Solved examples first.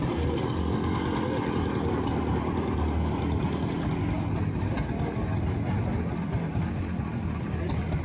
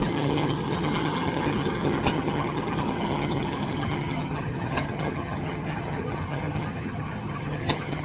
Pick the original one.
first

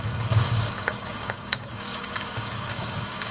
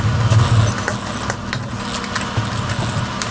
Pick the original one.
second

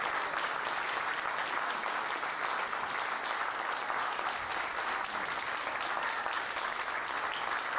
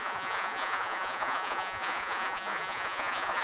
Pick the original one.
first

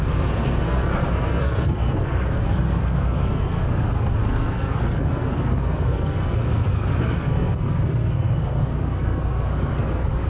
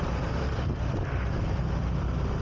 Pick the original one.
second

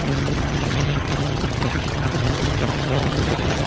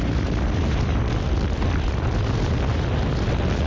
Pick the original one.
second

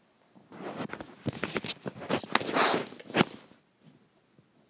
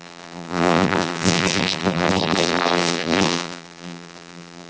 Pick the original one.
first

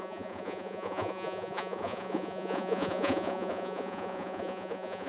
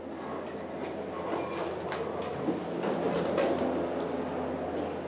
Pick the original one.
second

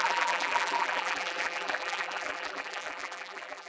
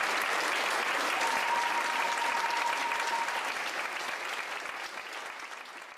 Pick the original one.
second